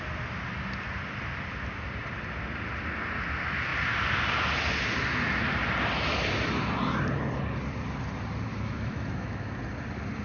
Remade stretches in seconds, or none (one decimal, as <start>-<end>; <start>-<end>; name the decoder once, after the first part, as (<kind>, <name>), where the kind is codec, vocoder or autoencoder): 8.5-9.5 (autoencoder, DAC-VAE)